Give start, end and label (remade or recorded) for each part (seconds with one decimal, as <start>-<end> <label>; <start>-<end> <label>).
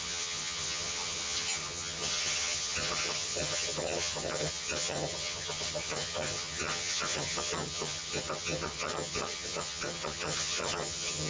0.0-11.3 remade